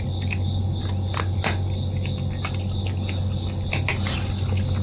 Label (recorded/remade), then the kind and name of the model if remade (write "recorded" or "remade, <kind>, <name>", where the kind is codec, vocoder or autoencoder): recorded